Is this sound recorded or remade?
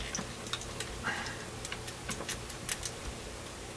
recorded